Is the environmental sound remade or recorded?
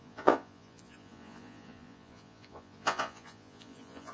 remade